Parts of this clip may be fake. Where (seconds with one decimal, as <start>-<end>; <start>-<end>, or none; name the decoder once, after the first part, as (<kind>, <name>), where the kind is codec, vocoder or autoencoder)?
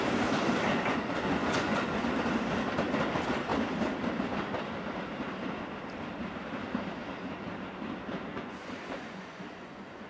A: 0.7-2.0 (vocoder, Vocos); 8.3-10.1